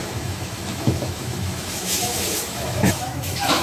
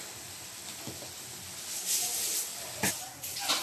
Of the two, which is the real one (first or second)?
second